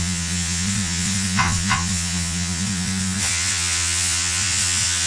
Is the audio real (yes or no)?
no